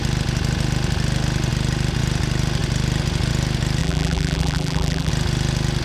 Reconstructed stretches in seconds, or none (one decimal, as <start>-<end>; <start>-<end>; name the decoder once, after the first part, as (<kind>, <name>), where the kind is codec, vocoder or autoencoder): 3.8-5.1 (vocoder, BigVGAN v2)